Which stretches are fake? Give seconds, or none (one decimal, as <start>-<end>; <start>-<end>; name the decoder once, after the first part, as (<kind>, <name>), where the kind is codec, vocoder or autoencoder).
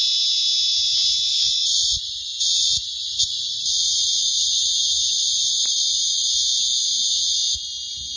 1.3-6.2 (vocoder, BigVGAN v2); 6.8-7.5